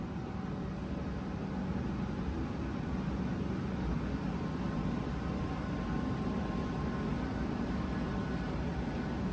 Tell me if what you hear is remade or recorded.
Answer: recorded